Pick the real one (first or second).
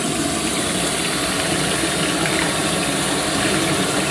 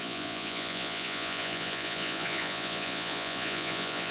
first